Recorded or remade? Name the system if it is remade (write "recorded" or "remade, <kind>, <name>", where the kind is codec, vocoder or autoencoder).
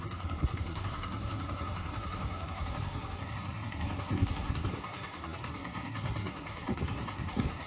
remade, codec, SNAC